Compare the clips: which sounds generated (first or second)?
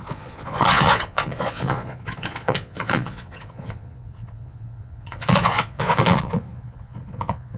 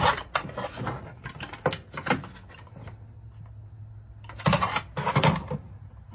first